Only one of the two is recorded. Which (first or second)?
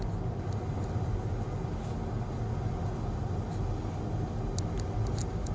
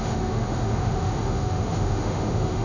first